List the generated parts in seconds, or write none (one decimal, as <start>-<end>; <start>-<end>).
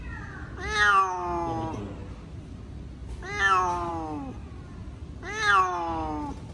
none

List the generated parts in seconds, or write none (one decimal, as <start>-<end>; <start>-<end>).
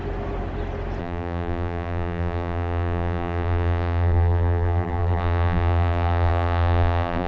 1.0-7.3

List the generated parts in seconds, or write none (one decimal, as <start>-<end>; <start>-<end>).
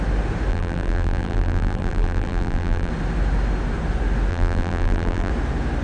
0.5-2.9; 4.3-5.3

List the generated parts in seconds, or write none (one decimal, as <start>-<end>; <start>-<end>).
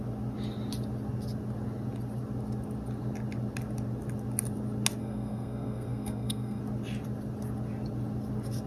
5.0-6.6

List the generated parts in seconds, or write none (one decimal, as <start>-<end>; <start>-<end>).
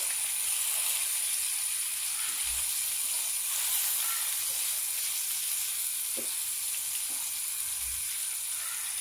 none